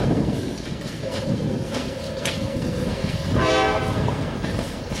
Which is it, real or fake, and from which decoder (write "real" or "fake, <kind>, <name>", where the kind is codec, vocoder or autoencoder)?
fake, codec, SNAC